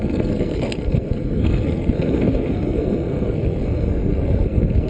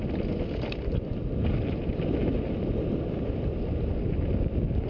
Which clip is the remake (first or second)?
first